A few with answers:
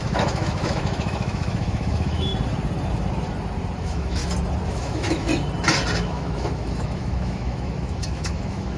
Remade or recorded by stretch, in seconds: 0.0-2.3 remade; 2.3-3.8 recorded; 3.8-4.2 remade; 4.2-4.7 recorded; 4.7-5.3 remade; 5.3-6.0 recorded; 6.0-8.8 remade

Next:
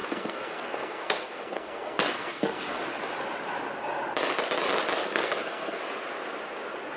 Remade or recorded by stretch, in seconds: 0.0-2.8 remade; 2.8-5.0 recorded; 5.0-5.8 remade; 5.8-7.0 recorded

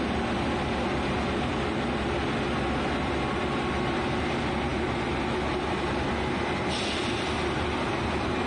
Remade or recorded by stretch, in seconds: 0.0-8.5 recorded

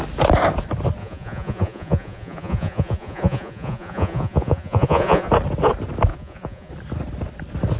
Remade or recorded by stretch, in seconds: 0.0-1.0 recorded; 1.0-5.3 remade; 5.3-6.1 recorded; 6.1-6.7 remade; 6.7-7.8 recorded